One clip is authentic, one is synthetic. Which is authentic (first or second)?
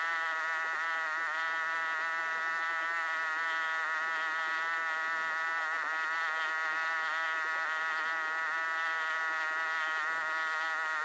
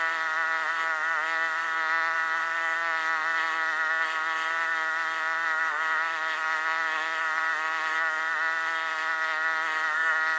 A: first